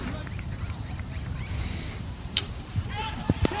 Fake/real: fake